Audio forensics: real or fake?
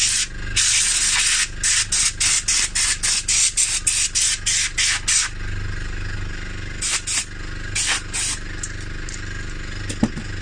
real